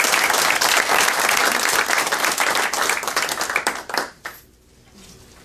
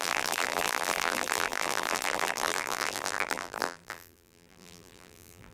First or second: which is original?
first